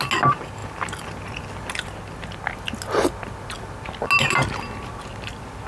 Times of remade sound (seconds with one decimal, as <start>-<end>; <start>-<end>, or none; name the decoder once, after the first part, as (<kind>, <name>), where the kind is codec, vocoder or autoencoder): none